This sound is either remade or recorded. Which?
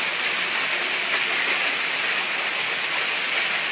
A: recorded